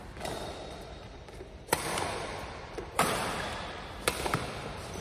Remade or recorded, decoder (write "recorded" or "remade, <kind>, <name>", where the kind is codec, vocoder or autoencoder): remade, vocoder, BigVGAN v2